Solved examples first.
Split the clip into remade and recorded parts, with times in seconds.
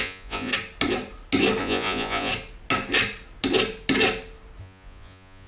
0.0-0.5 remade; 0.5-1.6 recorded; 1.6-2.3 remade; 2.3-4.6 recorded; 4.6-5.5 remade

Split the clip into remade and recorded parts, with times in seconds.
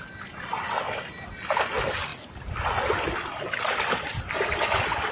0.0-5.1 recorded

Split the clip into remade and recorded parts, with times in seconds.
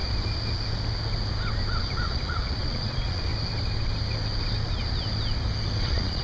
0.0-1.8 recorded; 1.8-3.3 remade; 3.3-5.8 recorded; 5.8-6.2 remade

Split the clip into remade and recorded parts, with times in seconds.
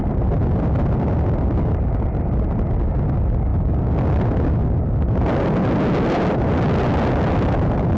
0.0-8.0 recorded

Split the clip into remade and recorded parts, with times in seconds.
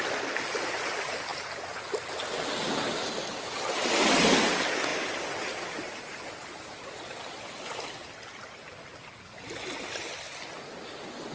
0.0-11.3 recorded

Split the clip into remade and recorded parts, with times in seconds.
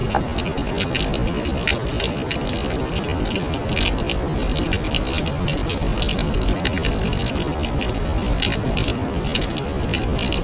0.0-10.4 recorded